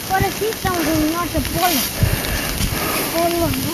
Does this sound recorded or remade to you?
recorded